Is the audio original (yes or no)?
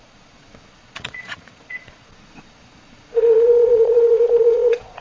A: no